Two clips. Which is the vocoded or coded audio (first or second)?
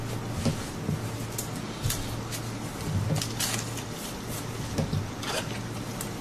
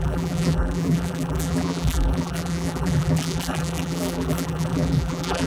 second